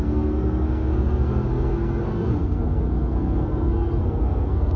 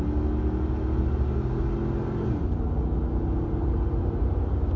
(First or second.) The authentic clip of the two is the second